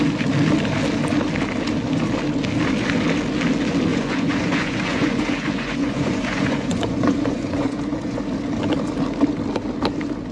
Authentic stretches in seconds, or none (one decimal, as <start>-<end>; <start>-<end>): 0.0-3.9; 8.2-10.3

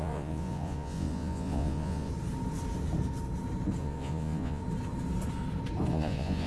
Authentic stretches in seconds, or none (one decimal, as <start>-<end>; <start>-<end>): 2.1-3.8; 4.6-5.9

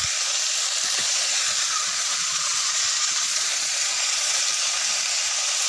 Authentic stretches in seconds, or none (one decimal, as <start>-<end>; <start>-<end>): 0.0-1.0; 4.4-5.7

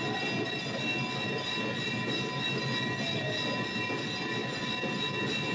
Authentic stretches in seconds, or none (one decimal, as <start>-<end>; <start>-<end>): 0.0-5.5

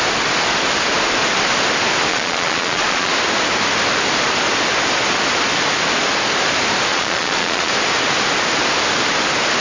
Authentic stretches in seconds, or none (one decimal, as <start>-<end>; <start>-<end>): 0.0-2.1; 3.1-6.9; 7.7-9.6